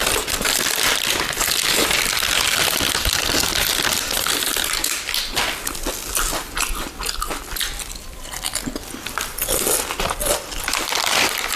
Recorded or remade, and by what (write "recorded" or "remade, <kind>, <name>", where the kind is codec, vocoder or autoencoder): recorded